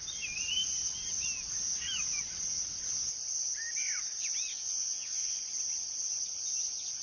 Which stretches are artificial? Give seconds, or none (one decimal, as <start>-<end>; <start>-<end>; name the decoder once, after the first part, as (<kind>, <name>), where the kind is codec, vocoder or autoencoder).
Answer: 4.5-5.4 (vocoder, Vocos)